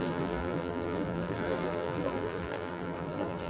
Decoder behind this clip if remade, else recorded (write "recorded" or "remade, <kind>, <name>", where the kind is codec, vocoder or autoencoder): remade, vocoder, BigVGAN v2